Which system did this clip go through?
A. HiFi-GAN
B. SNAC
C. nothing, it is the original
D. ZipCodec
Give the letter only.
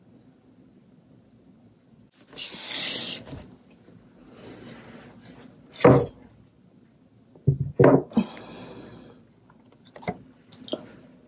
C